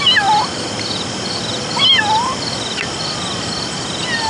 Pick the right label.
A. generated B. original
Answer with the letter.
B